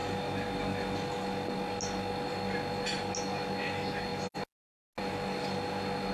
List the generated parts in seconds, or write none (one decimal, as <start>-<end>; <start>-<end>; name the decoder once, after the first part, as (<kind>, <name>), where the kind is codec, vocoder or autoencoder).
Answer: none